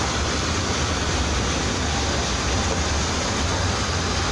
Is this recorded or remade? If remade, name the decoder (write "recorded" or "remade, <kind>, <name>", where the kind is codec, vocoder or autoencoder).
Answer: recorded